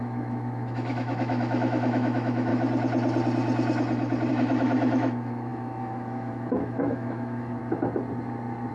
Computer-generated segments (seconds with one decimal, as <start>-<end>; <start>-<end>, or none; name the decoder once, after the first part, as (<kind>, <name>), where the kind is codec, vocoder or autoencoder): 0.0-2.5 (autoencoder, DAC-VAE); 4.3-7.6